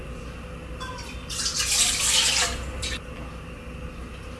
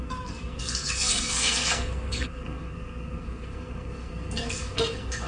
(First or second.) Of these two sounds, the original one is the first